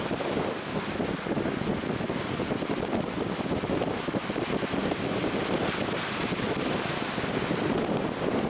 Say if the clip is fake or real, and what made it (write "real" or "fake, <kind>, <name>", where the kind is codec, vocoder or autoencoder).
real